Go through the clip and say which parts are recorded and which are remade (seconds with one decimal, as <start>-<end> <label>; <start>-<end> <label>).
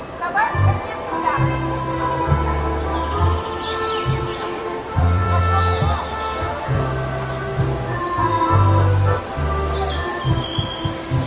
0.0-4.3 recorded; 4.3-5.4 remade; 5.4-11.3 recorded